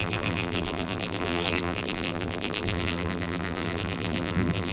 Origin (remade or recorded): remade